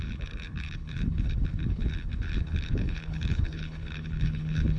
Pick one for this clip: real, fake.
fake